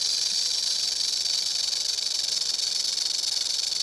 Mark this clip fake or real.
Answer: real